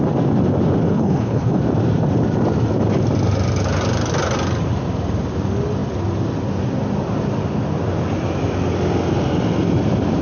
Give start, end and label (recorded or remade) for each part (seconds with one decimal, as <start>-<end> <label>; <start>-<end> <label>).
0.0-0.9 recorded; 0.9-1.6 remade; 1.6-10.2 recorded